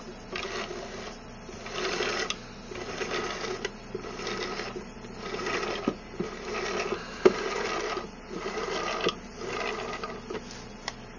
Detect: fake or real real